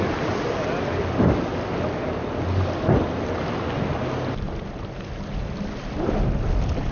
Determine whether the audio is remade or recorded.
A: recorded